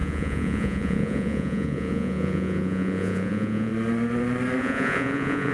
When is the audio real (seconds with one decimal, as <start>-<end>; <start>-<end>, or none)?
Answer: 3.7-4.6